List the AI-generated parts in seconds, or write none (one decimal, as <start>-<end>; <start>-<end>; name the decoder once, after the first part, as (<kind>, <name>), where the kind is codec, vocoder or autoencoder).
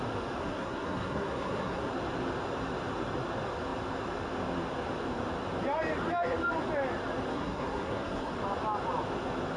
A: 0.4-1.9 (codec, SNAC); 7.3-8.3